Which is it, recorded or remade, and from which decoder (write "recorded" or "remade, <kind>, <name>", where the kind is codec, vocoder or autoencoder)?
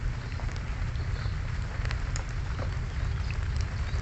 recorded